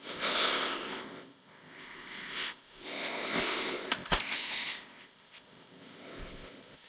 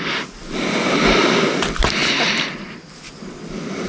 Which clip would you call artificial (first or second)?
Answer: first